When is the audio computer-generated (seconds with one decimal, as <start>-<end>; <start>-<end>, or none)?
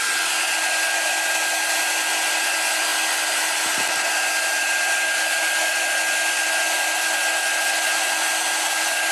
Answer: none